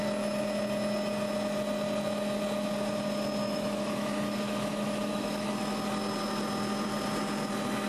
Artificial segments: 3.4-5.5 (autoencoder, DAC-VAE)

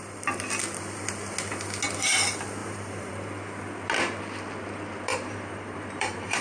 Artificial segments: 2.6-3.1 (vocoder, BigVGAN v2); 5.1-6.4

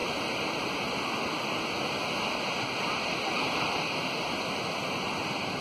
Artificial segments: none

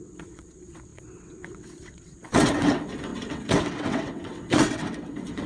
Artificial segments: 0.0-5.5 (vocoder, WaveNeXt)

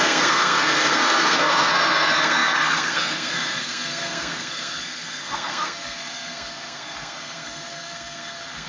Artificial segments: 0.0-8.7 (codec, SNAC)

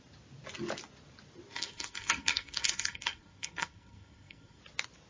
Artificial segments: 1.5-4.6 (codec, SNAC)

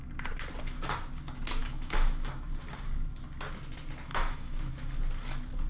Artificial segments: 1.6-2.5 (autoencoder, DAC-VAE); 4.1-4.7